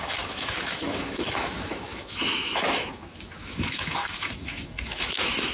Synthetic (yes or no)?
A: yes